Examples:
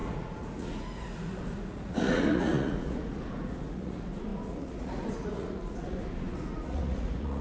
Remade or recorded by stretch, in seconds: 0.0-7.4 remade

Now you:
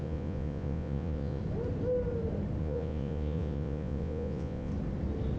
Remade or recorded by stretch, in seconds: 0.0-1.4 remade; 1.4-2.6 recorded; 2.6-4.7 remade; 4.7-5.4 recorded

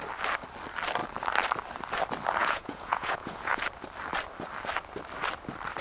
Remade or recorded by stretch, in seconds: 0.0-2.4 recorded; 2.4-3.6 remade; 3.6-5.8 recorded

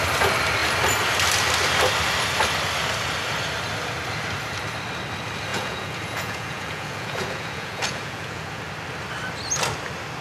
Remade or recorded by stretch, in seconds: 0.0-5.5 recorded; 5.5-8.6 remade; 8.6-10.2 recorded

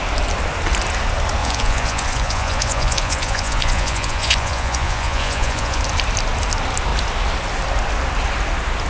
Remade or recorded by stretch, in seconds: 0.0-1.4 recorded; 1.4-5.8 remade; 5.8-8.9 recorded

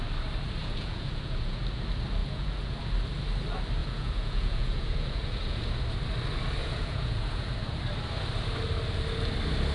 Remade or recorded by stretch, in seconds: 0.0-0.6 recorded; 0.6-1.6 remade; 1.6-2.2 recorded; 2.2-2.8 remade; 2.8-3.8 recorded; 3.8-5.8 remade; 5.8-6.6 recorded; 6.6-7.8 remade; 7.8-9.7 recorded

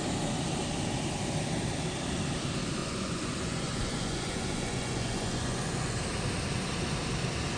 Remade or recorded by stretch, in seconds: 0.0-2.8 recorded; 2.8-6.0 remade; 6.0-7.6 recorded